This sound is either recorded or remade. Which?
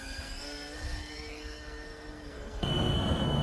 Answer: remade